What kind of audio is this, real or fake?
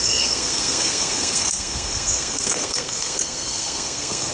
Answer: fake